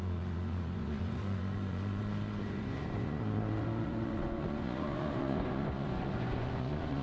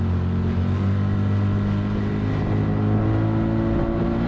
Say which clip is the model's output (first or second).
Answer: first